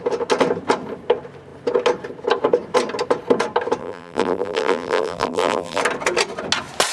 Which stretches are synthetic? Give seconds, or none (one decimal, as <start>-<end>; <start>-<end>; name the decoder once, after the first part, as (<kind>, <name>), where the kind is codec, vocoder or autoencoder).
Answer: 3.8-5.8 (vocoder, BigVGAN v2)